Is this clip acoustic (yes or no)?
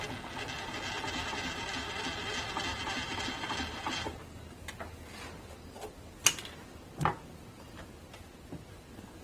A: yes